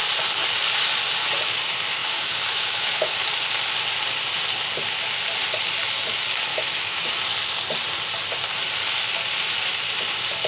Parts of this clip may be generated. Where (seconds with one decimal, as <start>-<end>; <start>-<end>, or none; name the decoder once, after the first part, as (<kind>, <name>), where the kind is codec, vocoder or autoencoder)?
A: 2.0-3.3 (autoencoder, DAC-VAE); 6.5-7.1